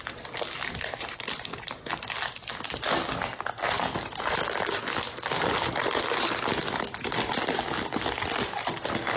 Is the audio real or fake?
real